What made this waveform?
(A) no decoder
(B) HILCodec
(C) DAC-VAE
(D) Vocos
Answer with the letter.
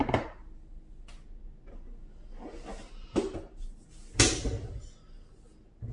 A